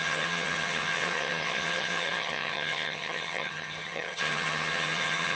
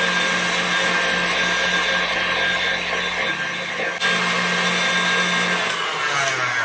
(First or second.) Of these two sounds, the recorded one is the second